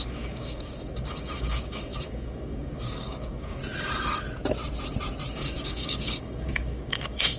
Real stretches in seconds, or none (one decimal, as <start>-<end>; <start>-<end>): 3.6-5.3